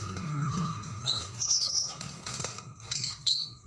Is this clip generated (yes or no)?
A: yes